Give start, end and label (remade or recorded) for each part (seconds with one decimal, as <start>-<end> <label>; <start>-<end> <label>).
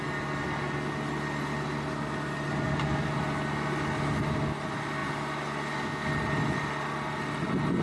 0.0-7.8 recorded